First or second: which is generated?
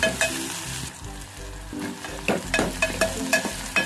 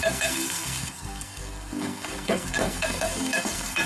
second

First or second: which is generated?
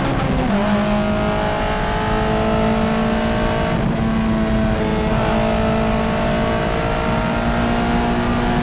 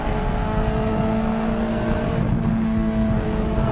second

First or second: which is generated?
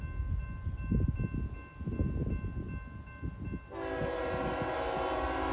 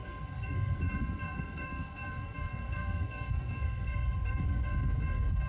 second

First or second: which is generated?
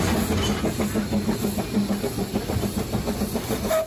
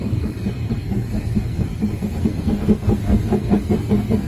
second